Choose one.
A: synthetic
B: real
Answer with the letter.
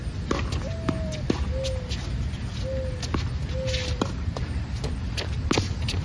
B